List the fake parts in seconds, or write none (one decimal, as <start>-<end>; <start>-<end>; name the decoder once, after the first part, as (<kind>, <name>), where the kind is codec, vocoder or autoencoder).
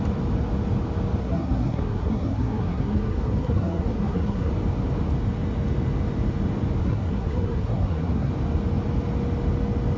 1.2-4.5 (codec, SNAC); 6.8-8.3